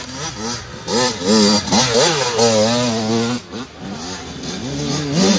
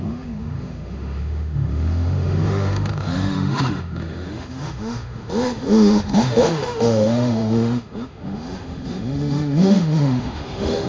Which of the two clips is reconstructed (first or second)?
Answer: second